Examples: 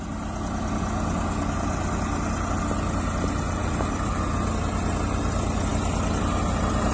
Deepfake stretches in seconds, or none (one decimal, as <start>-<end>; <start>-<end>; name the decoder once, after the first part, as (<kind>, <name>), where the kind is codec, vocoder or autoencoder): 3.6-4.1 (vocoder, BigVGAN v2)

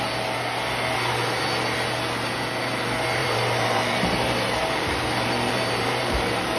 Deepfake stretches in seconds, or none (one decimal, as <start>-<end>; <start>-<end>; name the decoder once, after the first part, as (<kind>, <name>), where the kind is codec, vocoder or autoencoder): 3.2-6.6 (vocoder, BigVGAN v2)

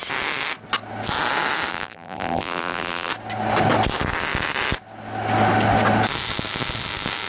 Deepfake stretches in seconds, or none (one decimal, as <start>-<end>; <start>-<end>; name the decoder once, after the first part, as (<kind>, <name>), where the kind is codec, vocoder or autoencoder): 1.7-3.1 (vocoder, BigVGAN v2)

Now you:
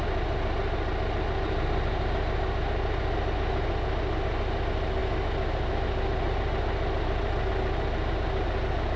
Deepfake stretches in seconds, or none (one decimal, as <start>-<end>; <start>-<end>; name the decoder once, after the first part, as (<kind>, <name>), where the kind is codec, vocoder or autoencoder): none

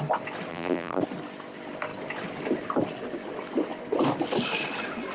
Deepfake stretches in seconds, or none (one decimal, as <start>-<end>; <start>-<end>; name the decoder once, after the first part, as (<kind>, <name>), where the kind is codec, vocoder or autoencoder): 0.5-1.0 (vocoder, BigVGAN v2)

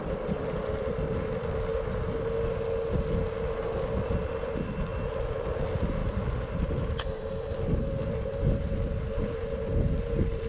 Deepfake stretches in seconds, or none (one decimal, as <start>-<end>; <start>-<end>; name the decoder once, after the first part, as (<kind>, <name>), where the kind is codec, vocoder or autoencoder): 0.0-1.7 (vocoder, BigVGAN v2); 4.0-4.9; 5.6-10.5

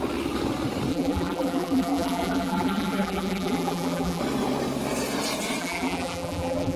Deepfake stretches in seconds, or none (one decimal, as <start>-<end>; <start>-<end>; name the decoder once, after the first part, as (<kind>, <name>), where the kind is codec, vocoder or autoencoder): 0.9-4.2 (vocoder, BigVGAN v2); 5.6-6.8